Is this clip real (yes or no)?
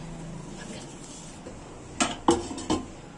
yes